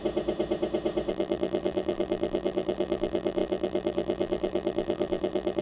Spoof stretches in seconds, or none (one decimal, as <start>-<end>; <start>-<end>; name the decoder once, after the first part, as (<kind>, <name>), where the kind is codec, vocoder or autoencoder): 1.1-5.6 (vocoder, BigVGAN v2)